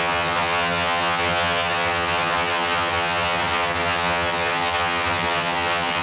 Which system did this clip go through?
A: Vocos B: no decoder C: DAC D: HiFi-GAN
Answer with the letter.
D